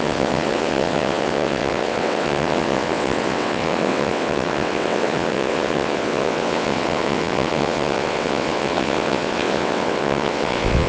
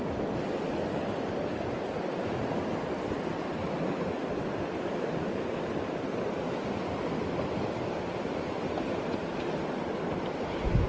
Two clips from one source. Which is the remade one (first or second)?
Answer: first